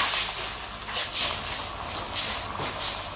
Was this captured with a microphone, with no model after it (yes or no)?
yes